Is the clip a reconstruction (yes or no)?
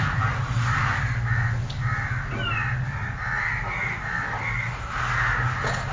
no